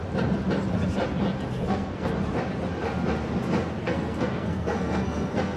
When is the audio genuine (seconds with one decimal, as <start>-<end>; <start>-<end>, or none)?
0.0-1.5; 2.1-3.8